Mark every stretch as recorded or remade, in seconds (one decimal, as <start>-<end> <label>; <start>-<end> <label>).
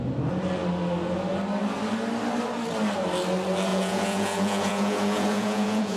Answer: 0.0-3.7 recorded; 3.7-6.0 remade